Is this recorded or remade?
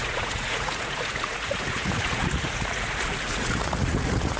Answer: remade